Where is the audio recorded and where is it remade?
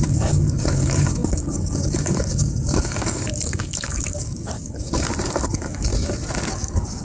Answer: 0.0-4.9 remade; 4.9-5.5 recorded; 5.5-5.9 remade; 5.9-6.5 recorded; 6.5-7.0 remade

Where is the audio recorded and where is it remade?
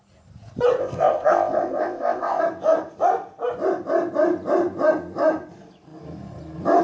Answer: 0.0-0.8 recorded; 0.8-2.4 remade; 2.4-6.8 recorded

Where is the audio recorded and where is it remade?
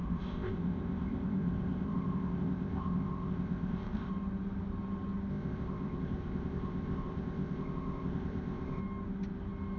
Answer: 0.0-4.1 remade; 4.1-5.3 recorded; 5.3-8.8 remade; 8.8-9.8 recorded